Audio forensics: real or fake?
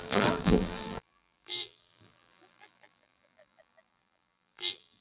fake